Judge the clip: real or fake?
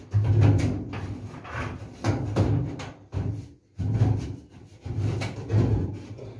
real